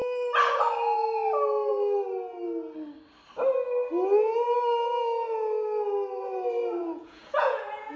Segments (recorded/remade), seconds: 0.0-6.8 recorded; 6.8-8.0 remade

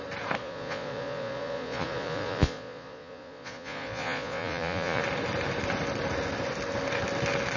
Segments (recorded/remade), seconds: 0.0-0.4 recorded; 0.4-5.0 remade; 5.0-7.6 recorded

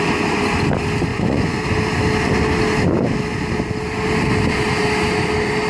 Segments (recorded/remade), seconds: 0.0-1.1 recorded; 1.1-1.6 remade; 1.6-5.7 recorded